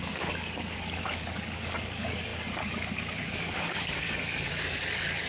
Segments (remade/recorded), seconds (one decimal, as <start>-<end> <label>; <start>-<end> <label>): 0.0-5.3 remade